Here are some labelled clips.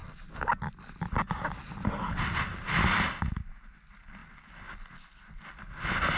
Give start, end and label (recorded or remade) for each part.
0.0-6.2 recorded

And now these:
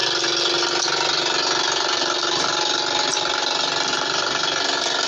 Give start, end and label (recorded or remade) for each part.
0.0-5.1 recorded

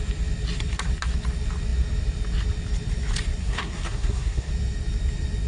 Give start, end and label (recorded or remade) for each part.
0.0-3.4 recorded; 3.4-4.5 remade; 4.5-5.5 recorded

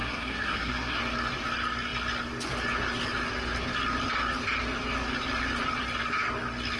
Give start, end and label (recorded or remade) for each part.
0.0-1.0 remade; 1.0-6.8 recorded

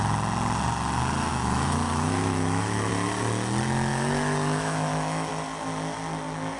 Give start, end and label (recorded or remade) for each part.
0.0-1.3 recorded; 1.3-2.9 remade; 2.9-3.9 recorded; 3.9-5.3 remade; 5.3-6.6 recorded

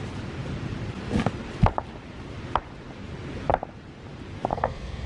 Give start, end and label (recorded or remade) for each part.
0.0-4.5 recorded; 4.5-5.1 remade